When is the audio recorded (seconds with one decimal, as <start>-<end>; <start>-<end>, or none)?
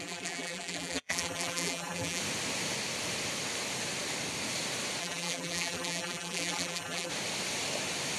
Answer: 2.2-5.0; 7.1-8.2